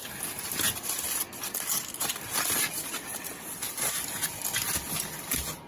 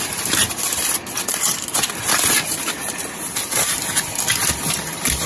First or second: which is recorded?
first